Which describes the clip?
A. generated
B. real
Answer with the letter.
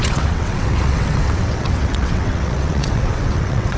A